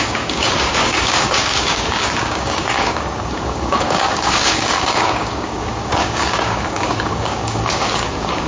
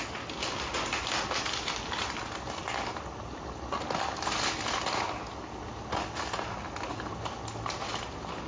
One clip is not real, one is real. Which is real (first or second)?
second